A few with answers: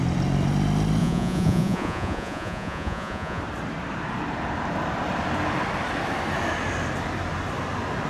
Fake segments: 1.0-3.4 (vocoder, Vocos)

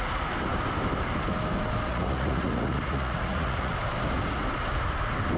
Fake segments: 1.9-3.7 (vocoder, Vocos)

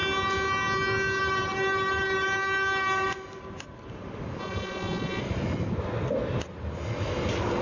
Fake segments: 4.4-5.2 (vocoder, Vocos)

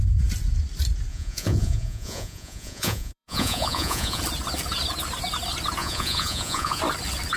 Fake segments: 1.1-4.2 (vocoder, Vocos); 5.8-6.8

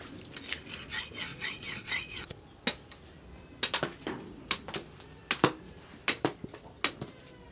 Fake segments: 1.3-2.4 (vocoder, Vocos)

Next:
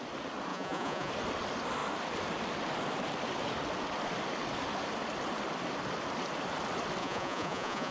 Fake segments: 0.5-1.1 (vocoder, Vocos); 7.0-7.9

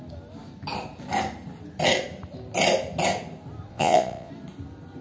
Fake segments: 3.7-4.3 (vocoder, Vocos)

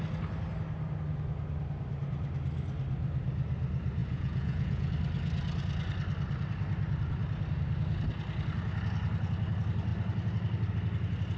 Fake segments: 4.0-4.9 (vocoder, Vocos)